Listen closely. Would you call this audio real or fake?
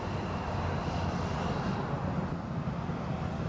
real